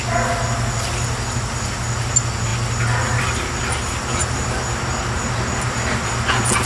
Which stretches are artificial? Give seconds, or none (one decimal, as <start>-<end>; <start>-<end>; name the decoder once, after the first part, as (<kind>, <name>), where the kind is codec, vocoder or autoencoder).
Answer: none